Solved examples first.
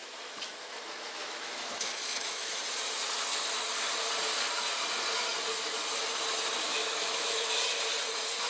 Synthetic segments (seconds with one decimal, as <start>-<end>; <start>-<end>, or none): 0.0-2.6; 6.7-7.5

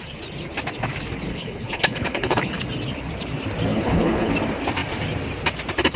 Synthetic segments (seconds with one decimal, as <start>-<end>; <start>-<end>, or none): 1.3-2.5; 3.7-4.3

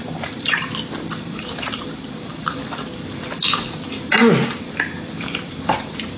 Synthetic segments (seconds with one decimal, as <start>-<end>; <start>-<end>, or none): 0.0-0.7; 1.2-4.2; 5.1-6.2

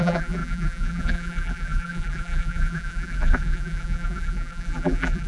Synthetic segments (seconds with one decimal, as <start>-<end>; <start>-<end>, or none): 0.0-5.3

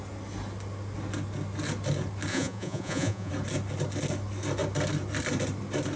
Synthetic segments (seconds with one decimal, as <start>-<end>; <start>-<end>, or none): 2.3-3.3